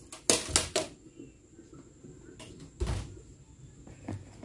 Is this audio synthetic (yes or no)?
no